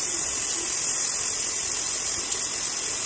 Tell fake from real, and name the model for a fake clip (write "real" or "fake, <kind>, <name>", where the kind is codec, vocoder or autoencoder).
real